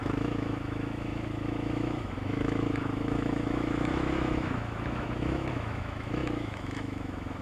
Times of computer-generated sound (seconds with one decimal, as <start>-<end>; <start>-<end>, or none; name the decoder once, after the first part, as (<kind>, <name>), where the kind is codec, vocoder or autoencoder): 0.0-7.4 (autoencoder, DAC-VAE)